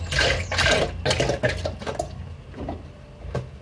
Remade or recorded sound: recorded